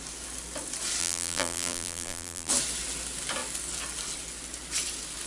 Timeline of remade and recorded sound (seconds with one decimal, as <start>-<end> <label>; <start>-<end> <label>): 0.0-1.0 recorded; 1.0-2.5 remade; 2.5-5.3 recorded